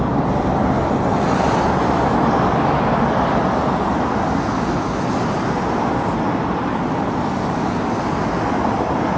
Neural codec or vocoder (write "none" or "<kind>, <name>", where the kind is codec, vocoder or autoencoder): none